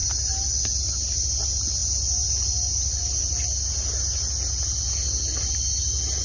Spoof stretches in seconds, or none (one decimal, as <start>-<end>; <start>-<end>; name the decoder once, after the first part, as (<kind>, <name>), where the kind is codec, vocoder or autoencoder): none